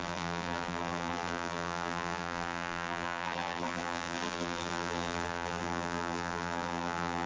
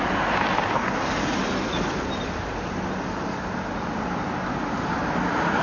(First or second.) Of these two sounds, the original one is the second